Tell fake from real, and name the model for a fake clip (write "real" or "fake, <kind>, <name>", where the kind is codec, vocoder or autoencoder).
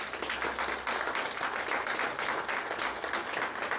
real